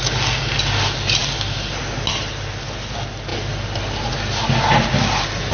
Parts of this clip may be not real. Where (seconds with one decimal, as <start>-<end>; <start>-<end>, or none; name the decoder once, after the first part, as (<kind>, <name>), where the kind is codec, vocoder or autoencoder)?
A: 1.2-1.8 (vocoder, BigVGAN v2)